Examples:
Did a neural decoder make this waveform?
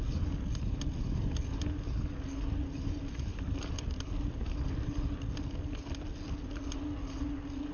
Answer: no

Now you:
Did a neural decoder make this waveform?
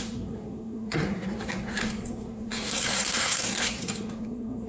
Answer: yes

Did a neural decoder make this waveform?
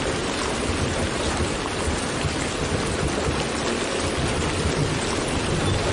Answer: no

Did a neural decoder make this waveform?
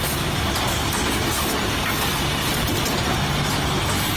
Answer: no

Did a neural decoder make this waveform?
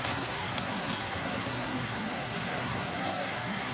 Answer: yes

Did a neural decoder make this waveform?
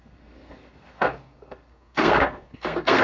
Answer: yes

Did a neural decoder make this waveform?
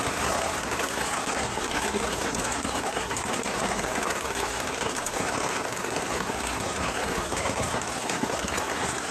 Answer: yes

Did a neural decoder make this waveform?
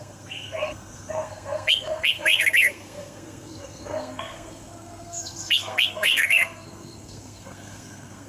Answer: yes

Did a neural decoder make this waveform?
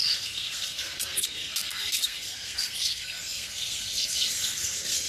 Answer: yes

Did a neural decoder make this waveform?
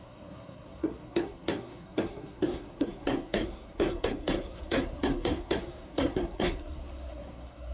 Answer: yes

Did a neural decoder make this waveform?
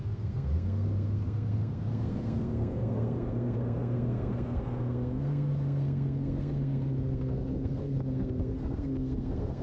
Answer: yes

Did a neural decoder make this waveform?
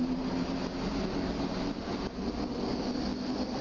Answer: no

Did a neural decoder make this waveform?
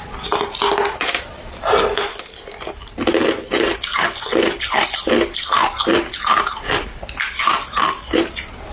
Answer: no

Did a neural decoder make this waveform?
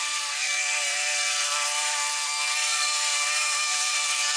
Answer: yes